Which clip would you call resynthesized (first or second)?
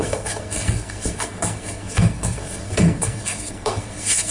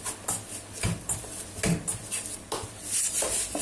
first